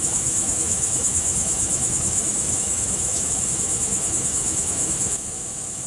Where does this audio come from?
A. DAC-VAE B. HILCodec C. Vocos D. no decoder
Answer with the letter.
A